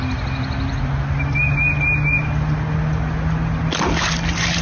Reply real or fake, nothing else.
real